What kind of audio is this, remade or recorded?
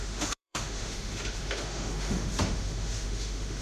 remade